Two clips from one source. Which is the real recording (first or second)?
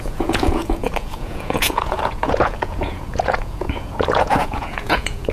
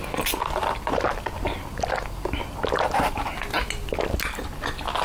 second